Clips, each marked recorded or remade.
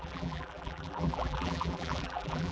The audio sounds remade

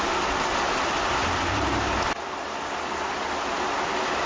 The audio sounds recorded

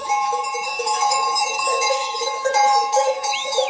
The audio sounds remade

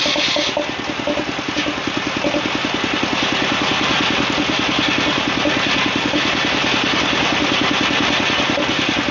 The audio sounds recorded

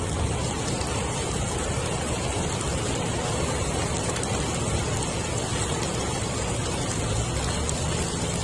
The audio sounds recorded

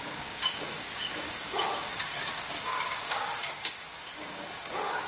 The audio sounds remade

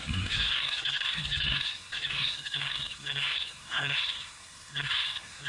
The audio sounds remade